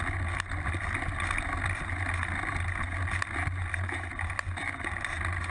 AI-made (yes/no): no